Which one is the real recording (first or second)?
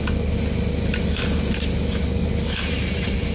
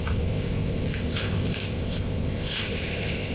first